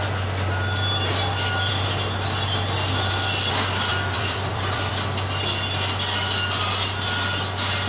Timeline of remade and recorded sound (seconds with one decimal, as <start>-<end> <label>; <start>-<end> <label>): 0.0-3.9 recorded; 3.9-4.9 remade; 4.9-7.9 recorded